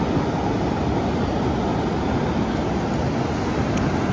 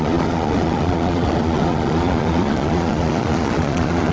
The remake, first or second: second